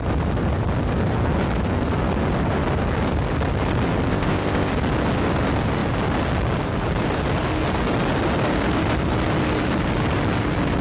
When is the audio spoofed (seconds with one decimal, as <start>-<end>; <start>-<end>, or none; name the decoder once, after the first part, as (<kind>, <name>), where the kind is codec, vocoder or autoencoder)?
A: 4.1-4.7 (codec, ZipCodec)